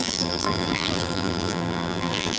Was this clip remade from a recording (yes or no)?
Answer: yes